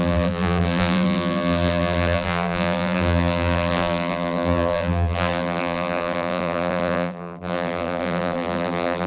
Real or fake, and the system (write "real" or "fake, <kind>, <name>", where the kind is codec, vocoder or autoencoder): fake, vocoder, BigVGAN v2